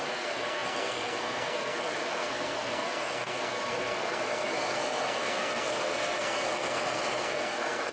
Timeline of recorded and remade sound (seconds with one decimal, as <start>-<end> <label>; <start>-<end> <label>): 0.0-7.9 remade